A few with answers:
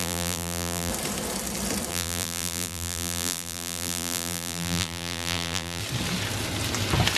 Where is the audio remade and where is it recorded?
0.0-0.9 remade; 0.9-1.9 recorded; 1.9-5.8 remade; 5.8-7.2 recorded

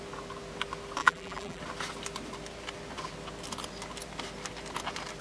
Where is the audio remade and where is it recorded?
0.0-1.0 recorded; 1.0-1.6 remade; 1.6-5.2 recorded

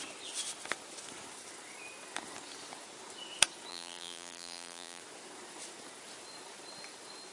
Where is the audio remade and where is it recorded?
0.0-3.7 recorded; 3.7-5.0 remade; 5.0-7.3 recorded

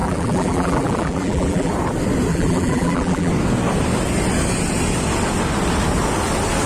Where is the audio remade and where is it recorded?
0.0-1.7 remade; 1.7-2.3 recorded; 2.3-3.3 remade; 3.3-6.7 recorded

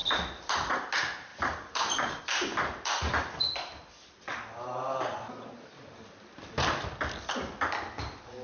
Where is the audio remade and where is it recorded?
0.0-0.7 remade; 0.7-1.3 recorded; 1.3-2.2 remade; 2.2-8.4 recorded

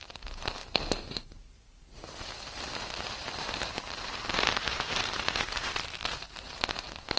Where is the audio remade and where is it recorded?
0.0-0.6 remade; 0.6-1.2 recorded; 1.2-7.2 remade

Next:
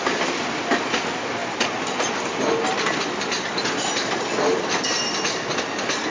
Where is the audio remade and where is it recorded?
0.0-6.1 recorded